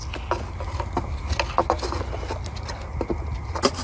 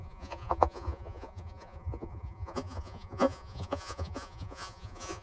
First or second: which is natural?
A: first